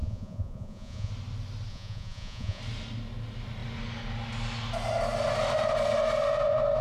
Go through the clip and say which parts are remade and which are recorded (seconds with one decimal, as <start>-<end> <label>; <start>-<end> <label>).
0.0-1.1 remade; 1.1-1.7 recorded; 1.7-2.6 remade; 2.6-6.8 recorded